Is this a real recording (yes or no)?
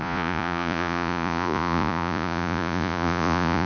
no